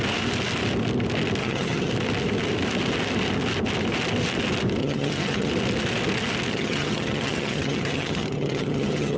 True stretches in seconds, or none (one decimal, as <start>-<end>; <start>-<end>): 0.0-1.4; 1.9-4.8; 5.5-6.5